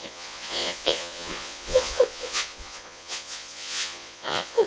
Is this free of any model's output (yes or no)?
no